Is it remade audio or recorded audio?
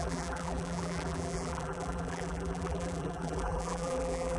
remade